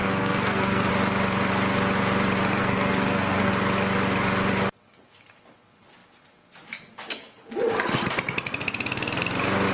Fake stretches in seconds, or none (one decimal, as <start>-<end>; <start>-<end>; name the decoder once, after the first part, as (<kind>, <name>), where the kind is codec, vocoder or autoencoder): 0.0-0.9 (codec, SNAC); 2.6-3.5